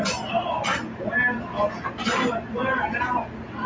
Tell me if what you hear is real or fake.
real